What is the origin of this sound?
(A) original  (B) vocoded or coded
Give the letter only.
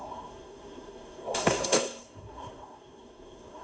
B